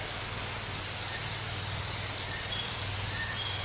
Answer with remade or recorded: recorded